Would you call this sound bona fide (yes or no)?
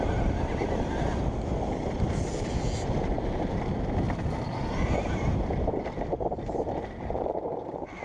yes